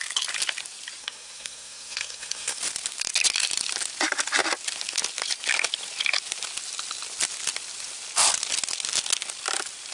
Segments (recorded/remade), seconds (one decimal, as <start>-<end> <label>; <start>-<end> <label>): 0.0-1.0 recorded; 1.0-2.6 remade; 2.6-9.9 recorded